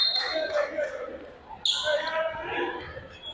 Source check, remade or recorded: recorded